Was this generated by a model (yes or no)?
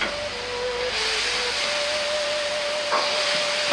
no